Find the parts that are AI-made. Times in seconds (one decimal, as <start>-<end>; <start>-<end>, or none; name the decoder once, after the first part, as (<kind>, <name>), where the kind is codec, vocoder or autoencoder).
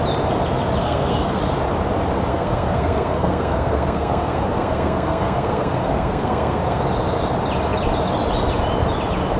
0.8-1.4 (codec, SNAC); 2.3-6.8